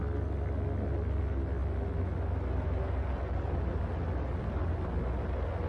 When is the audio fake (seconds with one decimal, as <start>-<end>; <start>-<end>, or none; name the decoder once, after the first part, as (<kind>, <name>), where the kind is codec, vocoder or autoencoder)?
none